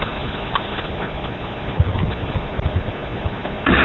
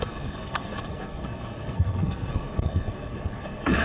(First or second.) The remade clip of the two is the second